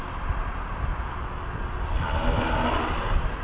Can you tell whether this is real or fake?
real